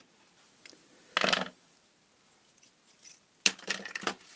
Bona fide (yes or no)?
yes